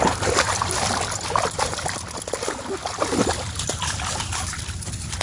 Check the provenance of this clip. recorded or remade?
recorded